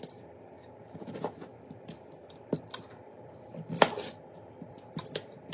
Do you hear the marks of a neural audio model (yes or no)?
yes